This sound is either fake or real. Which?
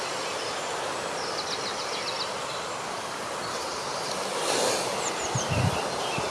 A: real